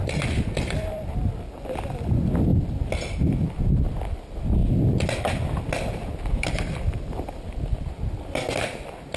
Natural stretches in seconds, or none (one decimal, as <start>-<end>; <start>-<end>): none